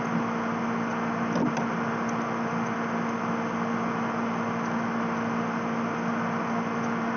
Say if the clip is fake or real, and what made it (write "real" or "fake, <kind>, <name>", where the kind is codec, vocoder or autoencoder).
real